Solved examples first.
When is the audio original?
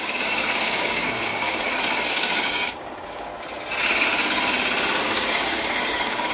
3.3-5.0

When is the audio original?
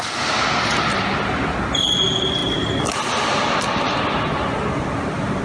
0.0-5.4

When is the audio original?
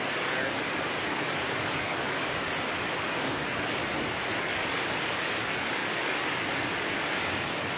3.8-4.4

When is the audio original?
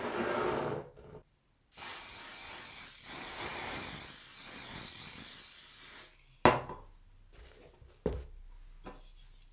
0.0-9.5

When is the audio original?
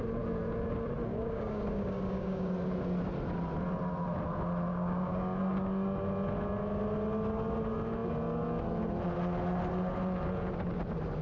0.0-1.1; 2.5-4.7; 5.4-11.2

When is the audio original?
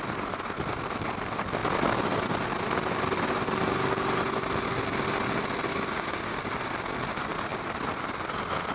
0.0-5.7; 6.4-8.7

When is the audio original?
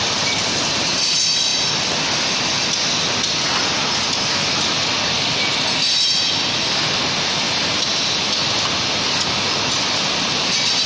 0.0-10.9